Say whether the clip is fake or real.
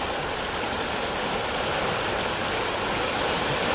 real